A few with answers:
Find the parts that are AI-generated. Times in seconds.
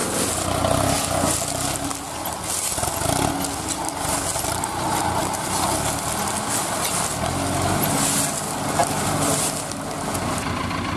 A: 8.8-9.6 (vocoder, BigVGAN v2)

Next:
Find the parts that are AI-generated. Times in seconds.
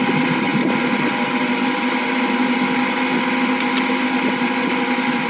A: none